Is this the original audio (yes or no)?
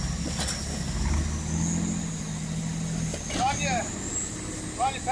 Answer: yes